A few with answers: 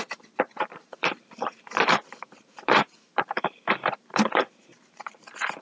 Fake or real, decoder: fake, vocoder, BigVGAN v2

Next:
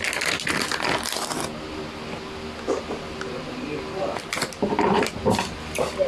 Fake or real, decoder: real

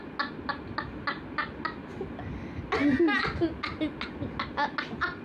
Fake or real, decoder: real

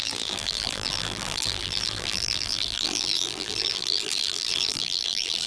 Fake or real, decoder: fake, vocoder, BigVGAN v2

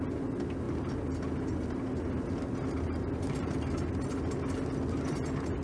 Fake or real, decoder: real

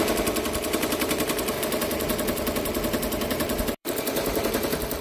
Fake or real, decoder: fake, vocoder, BigVGAN v2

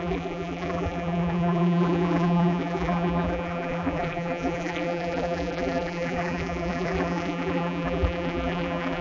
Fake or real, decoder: fake, vocoder, BigVGAN v2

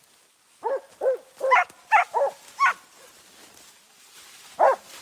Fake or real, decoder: real